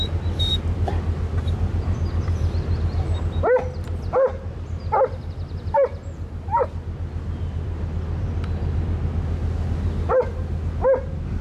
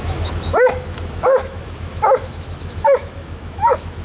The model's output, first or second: second